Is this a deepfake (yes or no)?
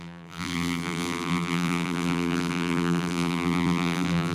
yes